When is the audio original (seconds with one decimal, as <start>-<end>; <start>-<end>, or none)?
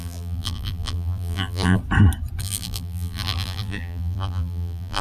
1.8-2.4